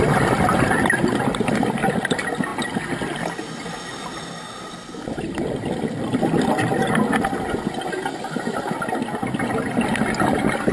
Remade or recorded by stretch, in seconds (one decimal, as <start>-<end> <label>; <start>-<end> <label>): 0.0-10.7 recorded